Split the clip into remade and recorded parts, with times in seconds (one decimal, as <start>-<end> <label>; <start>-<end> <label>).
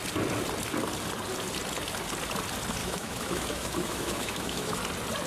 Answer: 0.0-2.8 recorded; 2.8-4.8 remade; 4.8-5.3 recorded